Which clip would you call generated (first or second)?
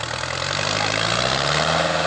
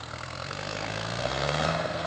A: second